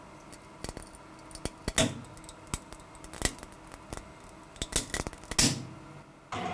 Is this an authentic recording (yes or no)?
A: yes